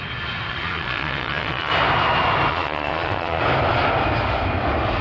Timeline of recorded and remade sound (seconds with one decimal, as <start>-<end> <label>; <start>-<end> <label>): 0.0-0.5 recorded; 0.5-1.7 remade; 1.7-2.5 recorded; 2.5-3.4 remade; 3.4-5.0 recorded